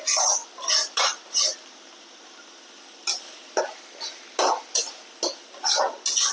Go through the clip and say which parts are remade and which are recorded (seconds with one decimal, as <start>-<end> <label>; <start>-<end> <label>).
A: 0.0-6.3 recorded